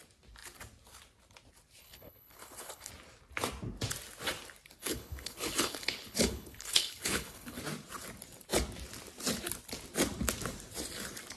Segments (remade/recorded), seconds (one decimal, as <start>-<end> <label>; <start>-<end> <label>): 0.0-1.8 recorded; 1.8-2.9 remade; 2.9-4.8 recorded; 4.8-7.6 remade; 7.6-11.4 recorded